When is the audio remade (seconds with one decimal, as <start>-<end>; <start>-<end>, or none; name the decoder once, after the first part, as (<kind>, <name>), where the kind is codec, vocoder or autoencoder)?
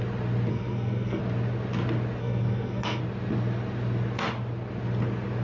0.5-1.2 (codec, SNAC); 2.2-3.0